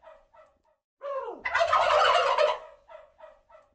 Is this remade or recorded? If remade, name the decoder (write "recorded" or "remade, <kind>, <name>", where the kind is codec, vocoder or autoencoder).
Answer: remade, vocoder, Vocos